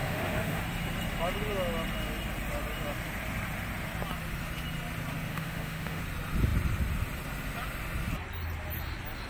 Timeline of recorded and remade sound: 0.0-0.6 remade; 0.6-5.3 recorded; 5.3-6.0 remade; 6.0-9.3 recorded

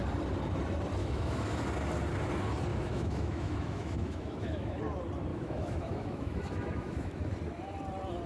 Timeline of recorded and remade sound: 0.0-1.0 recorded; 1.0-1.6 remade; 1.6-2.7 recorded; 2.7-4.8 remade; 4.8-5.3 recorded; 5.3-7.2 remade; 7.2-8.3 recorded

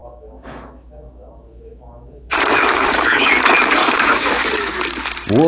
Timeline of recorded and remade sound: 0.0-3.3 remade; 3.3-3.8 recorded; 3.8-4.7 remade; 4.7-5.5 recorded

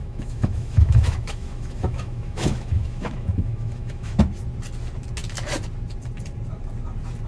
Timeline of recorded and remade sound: 0.0-4.2 remade; 4.2-7.3 recorded

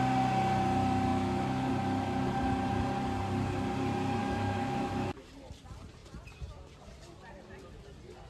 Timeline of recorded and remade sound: 0.0-1.1 recorded; 1.1-1.7 remade; 1.7-4.2 recorded; 4.2-5.3 remade; 5.3-8.3 recorded